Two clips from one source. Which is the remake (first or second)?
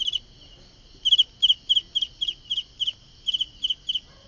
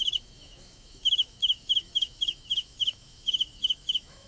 second